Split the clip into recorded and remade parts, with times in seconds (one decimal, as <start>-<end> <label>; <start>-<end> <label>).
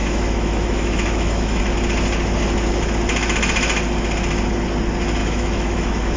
0.0-1.6 remade; 1.6-5.2 recorded; 5.2-6.2 remade